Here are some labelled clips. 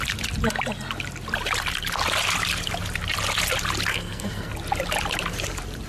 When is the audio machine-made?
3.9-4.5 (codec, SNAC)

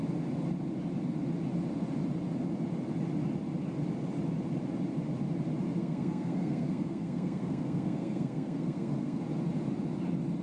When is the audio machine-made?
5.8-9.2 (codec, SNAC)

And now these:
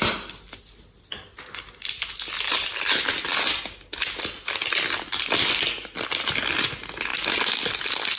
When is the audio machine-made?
none